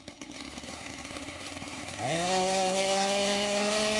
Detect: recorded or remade remade